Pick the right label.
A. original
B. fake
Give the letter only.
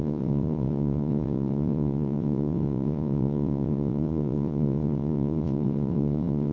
B